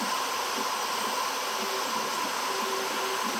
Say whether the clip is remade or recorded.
recorded